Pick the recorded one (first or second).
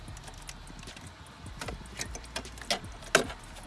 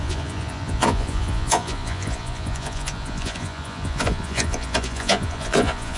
first